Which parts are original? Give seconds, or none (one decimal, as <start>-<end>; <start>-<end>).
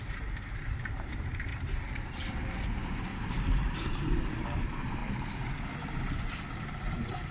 1.5-2.4; 3.1-3.7; 5.0-5.6